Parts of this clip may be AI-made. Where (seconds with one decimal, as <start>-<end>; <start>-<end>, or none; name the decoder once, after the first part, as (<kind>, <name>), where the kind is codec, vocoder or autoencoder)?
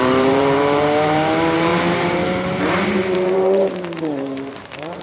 0.0-5.0 (vocoder, BigVGAN v2)